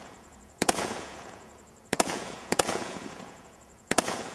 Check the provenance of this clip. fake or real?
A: fake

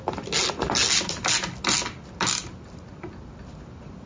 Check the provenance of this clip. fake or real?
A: real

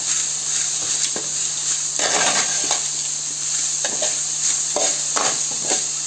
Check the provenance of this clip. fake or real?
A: real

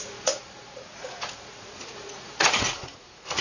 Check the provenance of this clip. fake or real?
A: fake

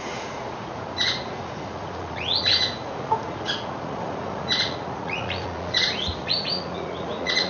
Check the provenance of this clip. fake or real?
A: fake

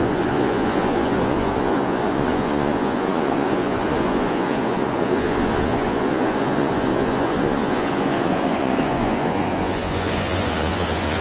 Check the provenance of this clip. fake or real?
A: fake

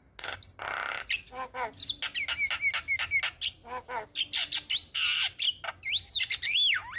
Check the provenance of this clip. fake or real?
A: real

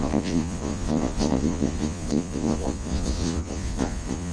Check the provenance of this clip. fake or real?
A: fake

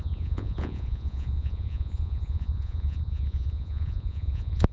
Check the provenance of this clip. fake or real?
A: fake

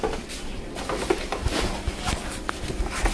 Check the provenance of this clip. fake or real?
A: real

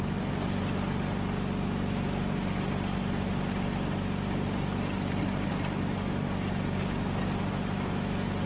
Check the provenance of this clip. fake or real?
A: real